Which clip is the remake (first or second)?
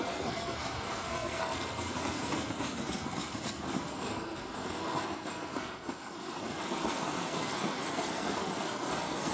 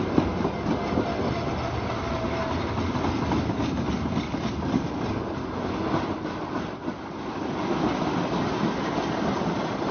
first